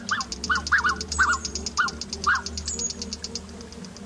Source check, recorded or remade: recorded